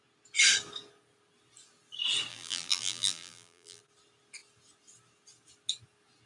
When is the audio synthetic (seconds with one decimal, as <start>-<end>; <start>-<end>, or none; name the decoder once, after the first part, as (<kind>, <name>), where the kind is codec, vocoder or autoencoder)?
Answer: 2.3-3.8 (vocoder, BigVGAN v2)